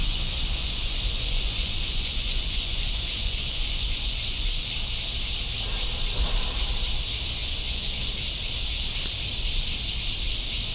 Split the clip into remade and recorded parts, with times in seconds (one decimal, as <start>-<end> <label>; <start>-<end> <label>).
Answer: 0.0-4.7 remade; 4.7-7.4 recorded; 7.4-8.1 remade; 8.1-10.7 recorded